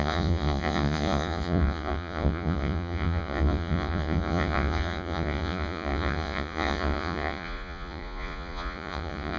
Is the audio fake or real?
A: fake